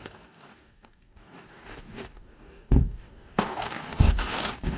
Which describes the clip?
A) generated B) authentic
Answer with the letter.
A